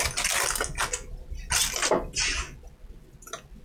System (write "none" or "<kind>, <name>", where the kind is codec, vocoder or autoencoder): none